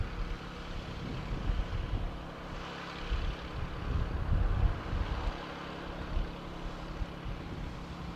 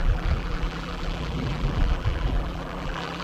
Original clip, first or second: first